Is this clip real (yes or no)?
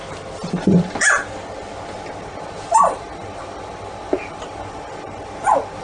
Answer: yes